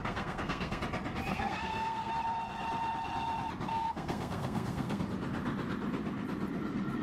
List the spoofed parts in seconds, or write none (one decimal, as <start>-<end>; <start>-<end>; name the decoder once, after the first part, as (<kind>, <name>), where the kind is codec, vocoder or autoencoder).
0.0-0.8 (codec, SNAC); 1.3-2.1; 3.7-5.0